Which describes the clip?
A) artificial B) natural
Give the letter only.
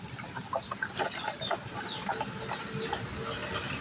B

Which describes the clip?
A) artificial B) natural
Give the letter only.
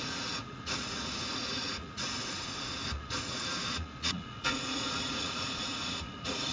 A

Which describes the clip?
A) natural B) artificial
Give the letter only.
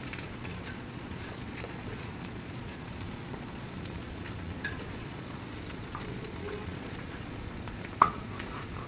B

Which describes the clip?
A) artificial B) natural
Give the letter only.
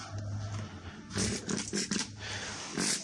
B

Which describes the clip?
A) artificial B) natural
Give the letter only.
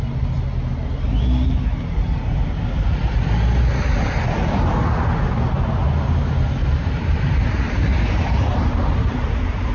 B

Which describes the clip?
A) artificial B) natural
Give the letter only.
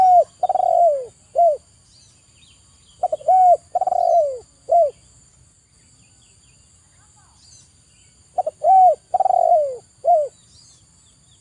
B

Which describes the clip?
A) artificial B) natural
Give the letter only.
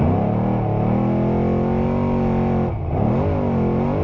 B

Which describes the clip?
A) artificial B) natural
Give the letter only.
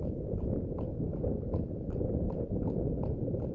B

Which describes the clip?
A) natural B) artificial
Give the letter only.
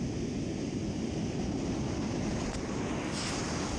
A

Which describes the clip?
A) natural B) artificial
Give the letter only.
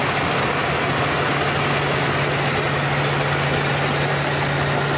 A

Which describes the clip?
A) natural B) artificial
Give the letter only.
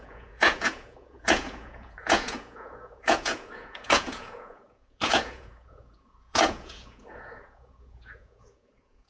B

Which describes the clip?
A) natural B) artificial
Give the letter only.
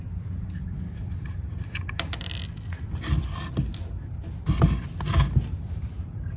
A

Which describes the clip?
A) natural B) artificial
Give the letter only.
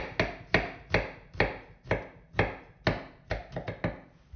A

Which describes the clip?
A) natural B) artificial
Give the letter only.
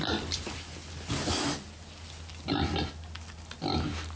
A